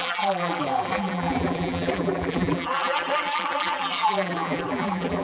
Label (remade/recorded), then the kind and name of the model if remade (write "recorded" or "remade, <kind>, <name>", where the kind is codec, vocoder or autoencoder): remade, vocoder, BigVGAN v2